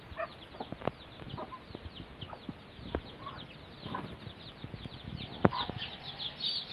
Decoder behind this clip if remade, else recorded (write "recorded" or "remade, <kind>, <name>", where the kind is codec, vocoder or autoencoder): recorded